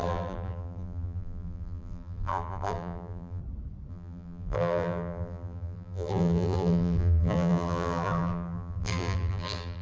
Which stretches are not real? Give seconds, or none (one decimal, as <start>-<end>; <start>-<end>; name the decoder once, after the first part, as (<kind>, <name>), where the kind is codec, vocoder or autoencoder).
0.0-3.4 (vocoder, BigVGAN v2); 3.9-9.8